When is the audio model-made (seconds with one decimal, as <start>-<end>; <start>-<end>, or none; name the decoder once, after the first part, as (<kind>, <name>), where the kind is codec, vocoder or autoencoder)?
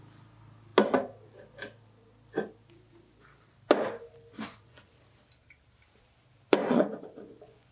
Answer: 4.3-4.9 (vocoder, Vocos); 6.6-7.7